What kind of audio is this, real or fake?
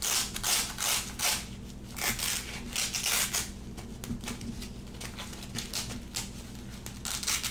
real